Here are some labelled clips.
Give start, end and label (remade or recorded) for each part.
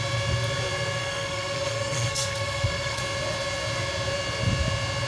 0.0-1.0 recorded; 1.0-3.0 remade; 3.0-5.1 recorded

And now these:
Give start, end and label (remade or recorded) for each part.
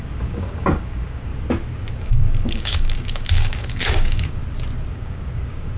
0.0-1.3 remade; 1.3-1.9 recorded; 1.9-4.4 remade; 4.4-4.9 recorded; 4.9-5.8 remade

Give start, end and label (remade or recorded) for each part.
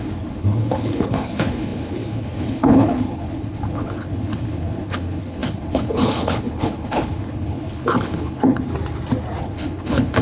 0.0-8.7 remade; 8.7-9.4 recorded; 9.4-10.2 remade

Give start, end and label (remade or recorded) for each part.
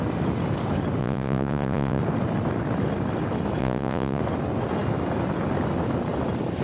0.0-1.0 recorded; 1.0-2.0 remade; 2.0-3.6 recorded; 3.6-4.2 remade; 4.2-6.6 recorded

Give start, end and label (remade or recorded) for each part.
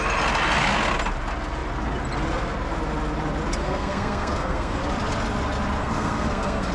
0.0-3.6 recorded; 3.6-4.8 remade; 4.8-5.8 recorded; 5.8-6.7 remade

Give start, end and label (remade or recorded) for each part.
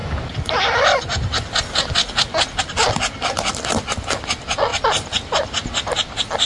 0.0-6.5 recorded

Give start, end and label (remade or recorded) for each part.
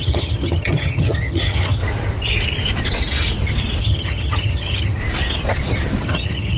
0.0-1.8 remade; 1.8-3.8 recorded; 3.8-5.0 remade; 5.0-6.0 recorded; 6.0-6.6 remade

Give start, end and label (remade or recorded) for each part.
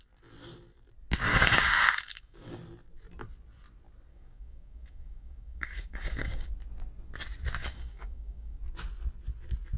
0.0-1.3 recorded; 1.3-2.6 remade; 2.6-4.1 recorded; 4.1-6.5 remade; 6.5-7.6 recorded; 7.6-8.6 remade; 8.6-9.8 recorded